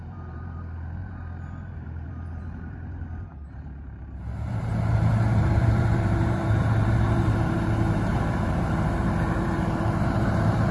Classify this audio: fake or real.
fake